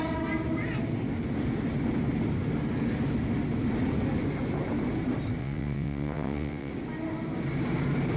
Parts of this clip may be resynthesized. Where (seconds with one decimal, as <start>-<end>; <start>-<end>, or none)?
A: 5.4-6.7